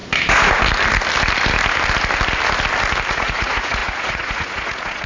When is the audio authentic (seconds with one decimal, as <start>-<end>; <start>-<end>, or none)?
0.0-3.1